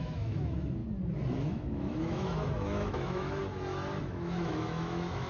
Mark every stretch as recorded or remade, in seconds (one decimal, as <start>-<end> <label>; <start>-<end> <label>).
0.0-0.8 remade; 0.8-1.4 recorded; 1.4-3.4 remade; 3.4-4.0 recorded; 4.0-5.3 remade